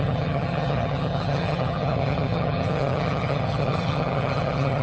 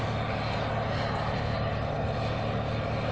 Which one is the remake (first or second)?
first